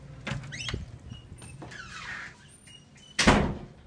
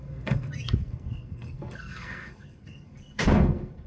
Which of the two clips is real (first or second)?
first